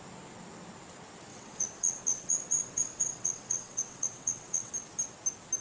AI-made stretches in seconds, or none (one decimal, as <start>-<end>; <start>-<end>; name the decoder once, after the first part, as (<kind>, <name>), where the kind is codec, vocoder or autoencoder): 1.3-4.7 (vocoder, WaveNeXt)